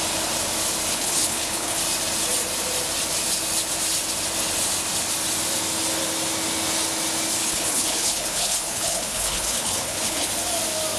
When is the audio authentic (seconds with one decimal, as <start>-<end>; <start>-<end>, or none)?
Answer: 0.0-0.9; 1.8-7.4; 10.3-11.0